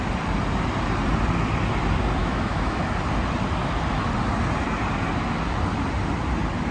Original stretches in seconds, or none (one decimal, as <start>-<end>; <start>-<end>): 0.0-2.2; 2.8-6.7